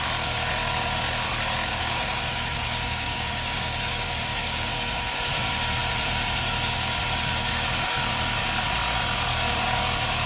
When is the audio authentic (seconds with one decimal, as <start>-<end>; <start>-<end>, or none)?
0.0-1.7; 4.7-9.3; 9.8-10.3